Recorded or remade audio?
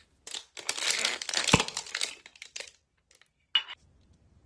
recorded